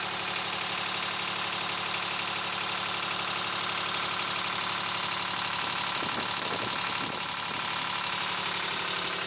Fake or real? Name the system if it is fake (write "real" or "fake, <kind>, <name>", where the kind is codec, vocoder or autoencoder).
real